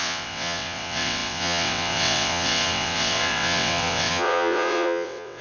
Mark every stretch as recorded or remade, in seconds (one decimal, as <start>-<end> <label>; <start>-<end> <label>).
0.0-5.4 remade